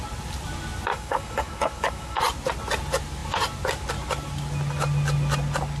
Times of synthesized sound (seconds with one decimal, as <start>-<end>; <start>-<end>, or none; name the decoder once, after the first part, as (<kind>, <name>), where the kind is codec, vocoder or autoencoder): 0.9-2.2 (codec, DAC)